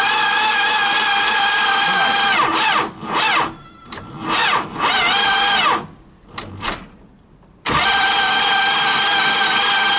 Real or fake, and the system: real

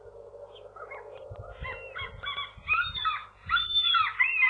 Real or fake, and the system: real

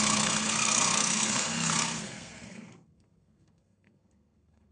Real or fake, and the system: fake, codec, SNAC